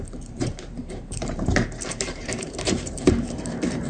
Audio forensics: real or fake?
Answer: fake